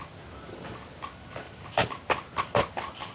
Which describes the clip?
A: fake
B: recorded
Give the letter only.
B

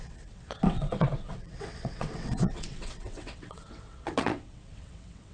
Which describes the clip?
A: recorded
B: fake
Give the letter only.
B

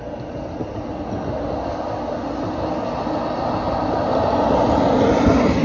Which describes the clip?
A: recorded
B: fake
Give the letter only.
A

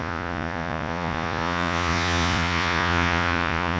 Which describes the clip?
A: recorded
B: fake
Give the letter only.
B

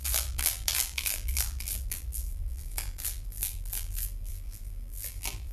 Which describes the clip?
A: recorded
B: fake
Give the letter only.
B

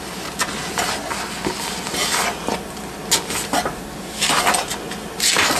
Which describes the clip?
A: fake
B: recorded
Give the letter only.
B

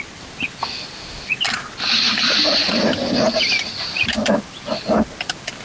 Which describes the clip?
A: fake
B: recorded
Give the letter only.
B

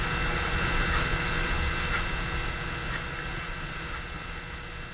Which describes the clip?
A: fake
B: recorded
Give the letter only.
B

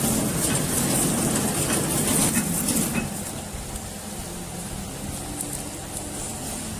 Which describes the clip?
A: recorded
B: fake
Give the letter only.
A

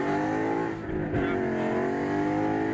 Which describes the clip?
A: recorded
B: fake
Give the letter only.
A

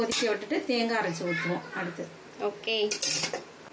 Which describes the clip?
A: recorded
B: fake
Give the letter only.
A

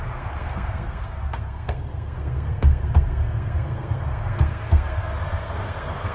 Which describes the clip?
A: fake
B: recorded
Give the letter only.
A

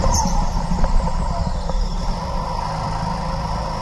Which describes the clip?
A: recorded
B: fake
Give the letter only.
A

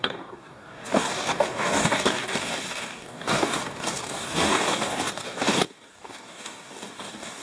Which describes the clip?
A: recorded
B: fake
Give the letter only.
B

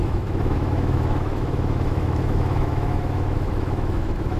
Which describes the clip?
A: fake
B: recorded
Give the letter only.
A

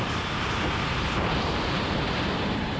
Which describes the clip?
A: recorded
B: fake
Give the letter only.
B